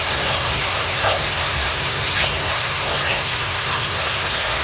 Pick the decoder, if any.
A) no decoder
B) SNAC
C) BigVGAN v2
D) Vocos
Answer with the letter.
B